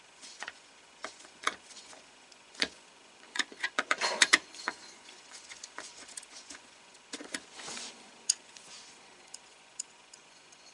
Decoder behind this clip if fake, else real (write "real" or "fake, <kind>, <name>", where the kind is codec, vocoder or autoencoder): fake, vocoder, Vocos